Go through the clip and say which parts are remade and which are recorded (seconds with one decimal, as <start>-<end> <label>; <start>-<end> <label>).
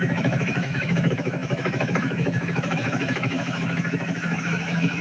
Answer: 0.0-5.0 remade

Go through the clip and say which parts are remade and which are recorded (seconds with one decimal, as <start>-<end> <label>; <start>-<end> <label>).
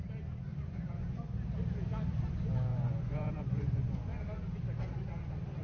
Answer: 0.0-0.5 recorded; 0.5-1.2 remade; 1.2-2.7 recorded; 2.7-4.2 remade; 4.2-5.6 recorded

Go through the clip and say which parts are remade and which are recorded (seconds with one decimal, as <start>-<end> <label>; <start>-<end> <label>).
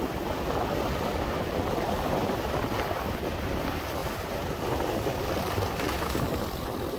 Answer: 0.0-7.0 recorded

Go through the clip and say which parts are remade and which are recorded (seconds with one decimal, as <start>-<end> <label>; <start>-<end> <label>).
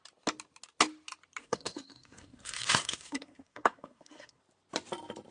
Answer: 0.0-1.4 recorded; 1.4-4.4 remade; 4.4-5.3 recorded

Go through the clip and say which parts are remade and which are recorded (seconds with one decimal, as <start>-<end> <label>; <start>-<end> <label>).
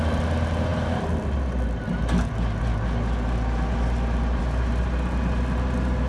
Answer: 0.0-6.1 recorded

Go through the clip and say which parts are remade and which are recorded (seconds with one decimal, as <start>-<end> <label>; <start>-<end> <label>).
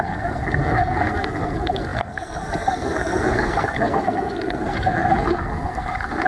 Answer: 0.0-6.3 remade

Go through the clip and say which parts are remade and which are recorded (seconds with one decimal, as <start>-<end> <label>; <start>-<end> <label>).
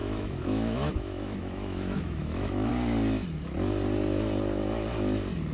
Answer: 0.0-2.7 remade; 2.7-5.5 recorded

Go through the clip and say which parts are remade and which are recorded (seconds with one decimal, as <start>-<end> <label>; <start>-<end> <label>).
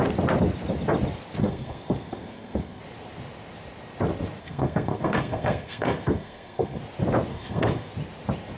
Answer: 0.0-1.4 recorded; 1.4-2.8 remade; 2.8-4.4 recorded; 4.4-6.8 remade; 6.8-7.3 recorded; 7.3-7.9 remade; 7.9-8.6 recorded